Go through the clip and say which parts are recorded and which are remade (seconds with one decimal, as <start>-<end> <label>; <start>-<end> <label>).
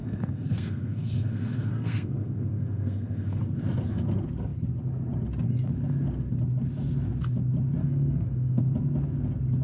0.0-3.4 remade; 3.4-7.8 recorded; 7.8-8.6 remade; 8.6-9.6 recorded